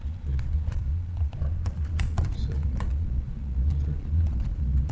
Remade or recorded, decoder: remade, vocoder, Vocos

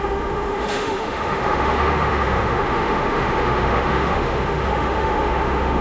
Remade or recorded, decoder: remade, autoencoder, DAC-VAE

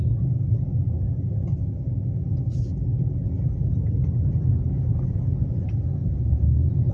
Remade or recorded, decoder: recorded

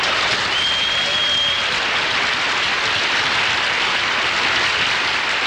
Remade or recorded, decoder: recorded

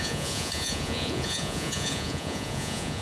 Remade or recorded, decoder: remade, vocoder, Vocos